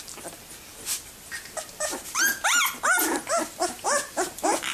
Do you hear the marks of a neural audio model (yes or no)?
no